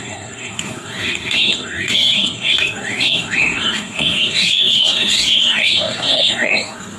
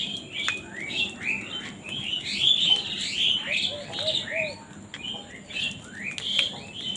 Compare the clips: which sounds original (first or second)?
second